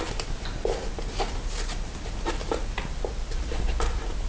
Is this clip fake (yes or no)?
no